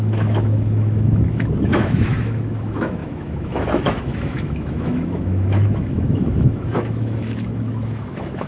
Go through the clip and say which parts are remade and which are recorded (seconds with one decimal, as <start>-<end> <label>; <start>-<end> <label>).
0.0-8.5 remade